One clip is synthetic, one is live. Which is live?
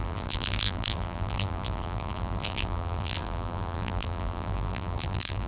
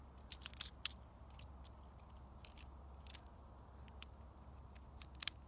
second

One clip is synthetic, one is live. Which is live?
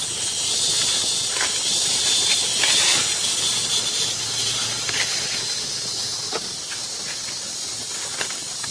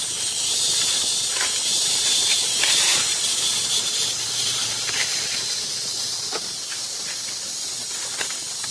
first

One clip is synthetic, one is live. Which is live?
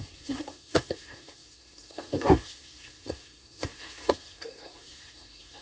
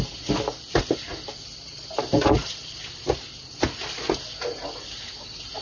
second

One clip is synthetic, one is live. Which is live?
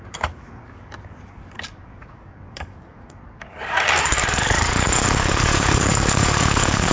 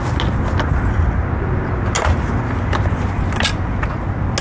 second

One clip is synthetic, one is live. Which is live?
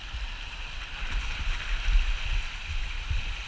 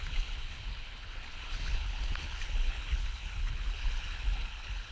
first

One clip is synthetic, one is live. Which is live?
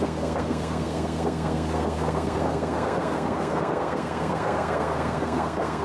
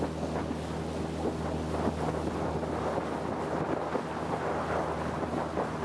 second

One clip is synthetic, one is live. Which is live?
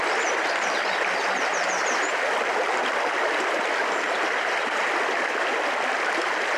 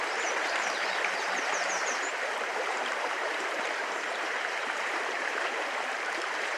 first